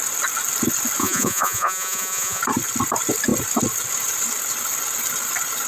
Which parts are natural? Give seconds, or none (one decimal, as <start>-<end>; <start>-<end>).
0.0-1.0; 2.4-5.7